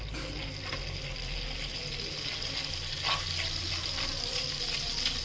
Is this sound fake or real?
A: real